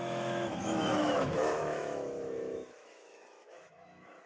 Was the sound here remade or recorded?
remade